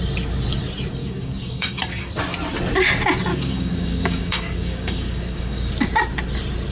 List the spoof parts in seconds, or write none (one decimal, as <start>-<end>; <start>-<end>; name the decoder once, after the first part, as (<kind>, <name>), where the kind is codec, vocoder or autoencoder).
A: 1.0-2.1 (codec, DAC); 3.3-5.7